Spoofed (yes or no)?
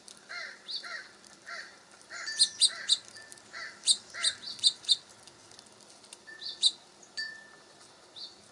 no